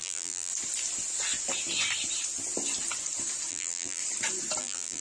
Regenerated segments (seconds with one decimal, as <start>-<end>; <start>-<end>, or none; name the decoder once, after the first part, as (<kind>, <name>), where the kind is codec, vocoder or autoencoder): 0.0-0.5 (vocoder, BigVGAN v2); 3.5-4.0; 4.6-5.0